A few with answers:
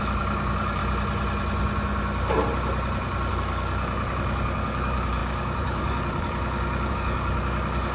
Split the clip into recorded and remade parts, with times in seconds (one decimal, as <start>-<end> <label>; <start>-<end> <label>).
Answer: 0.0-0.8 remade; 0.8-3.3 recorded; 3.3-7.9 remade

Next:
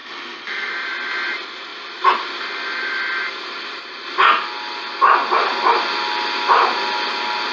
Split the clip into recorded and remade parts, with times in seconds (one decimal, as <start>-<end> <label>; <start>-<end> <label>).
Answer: 0.0-0.7 remade; 0.7-7.5 recorded

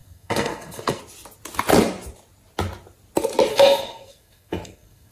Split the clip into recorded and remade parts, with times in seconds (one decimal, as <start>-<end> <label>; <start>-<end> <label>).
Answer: 0.0-1.0 remade; 1.0-3.5 recorded; 3.5-5.1 remade

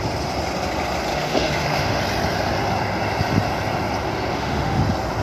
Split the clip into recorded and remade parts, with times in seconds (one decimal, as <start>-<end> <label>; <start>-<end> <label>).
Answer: 0.0-1.1 recorded; 1.1-2.0 remade; 2.0-4.3 recorded; 4.3-4.8 remade; 4.8-5.2 recorded

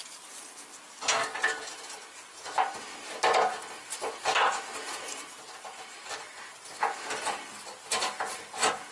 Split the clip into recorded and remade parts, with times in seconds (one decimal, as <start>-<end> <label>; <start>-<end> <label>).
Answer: 0.0-8.9 recorded

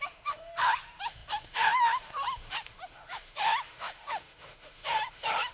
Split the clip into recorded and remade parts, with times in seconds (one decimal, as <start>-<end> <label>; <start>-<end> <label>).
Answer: 0.0-5.5 remade